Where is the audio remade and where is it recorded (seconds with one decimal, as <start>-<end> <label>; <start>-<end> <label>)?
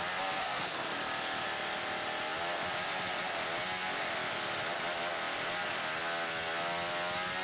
0.0-0.4 recorded; 0.4-1.0 remade; 1.0-7.4 recorded